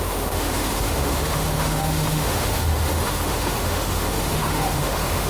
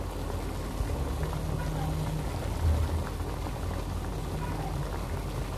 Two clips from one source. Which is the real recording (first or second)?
second